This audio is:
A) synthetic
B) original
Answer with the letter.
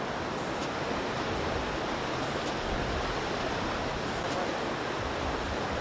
B